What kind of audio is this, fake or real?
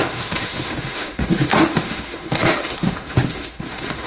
fake